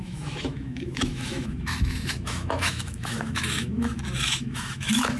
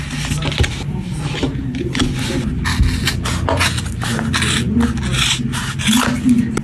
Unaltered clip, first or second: second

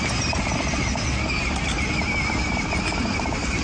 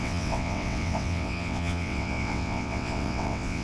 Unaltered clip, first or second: first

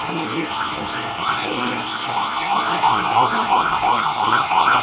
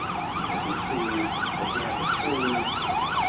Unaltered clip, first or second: second